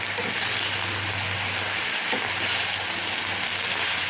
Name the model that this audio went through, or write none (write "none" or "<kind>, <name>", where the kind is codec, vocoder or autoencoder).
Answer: none